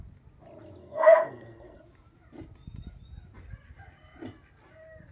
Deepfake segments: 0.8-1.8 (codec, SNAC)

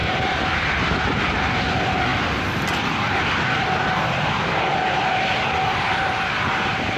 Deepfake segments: none